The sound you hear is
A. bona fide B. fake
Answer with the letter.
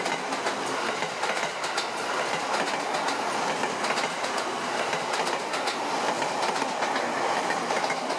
A